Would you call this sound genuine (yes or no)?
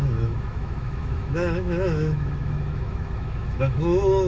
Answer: no